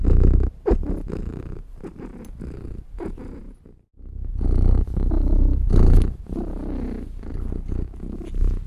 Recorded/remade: recorded